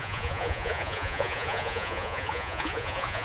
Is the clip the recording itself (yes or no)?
no